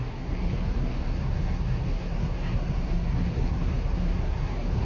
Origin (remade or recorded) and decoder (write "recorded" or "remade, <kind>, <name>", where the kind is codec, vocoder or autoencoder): remade, codec, SNAC